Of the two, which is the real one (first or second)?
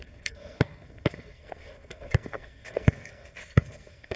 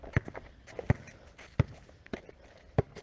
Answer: second